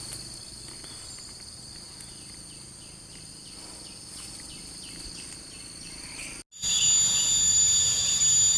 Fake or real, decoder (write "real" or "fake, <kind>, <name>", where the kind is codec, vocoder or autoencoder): real